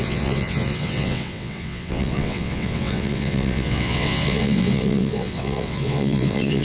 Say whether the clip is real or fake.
fake